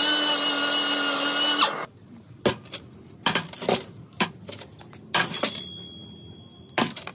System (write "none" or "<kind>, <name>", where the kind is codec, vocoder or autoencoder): none